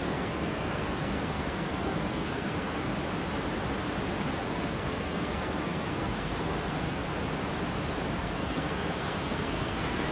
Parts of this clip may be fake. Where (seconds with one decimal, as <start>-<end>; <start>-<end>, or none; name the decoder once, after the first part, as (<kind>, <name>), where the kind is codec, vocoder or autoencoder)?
0.0-2.9 (codec, SNAC); 4.4-7.0; 8.2-10.1